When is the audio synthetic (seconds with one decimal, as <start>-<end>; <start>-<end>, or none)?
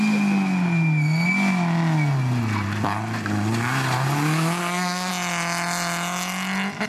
4.6-5.1